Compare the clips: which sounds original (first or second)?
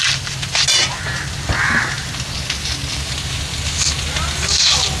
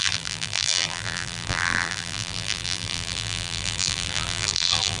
first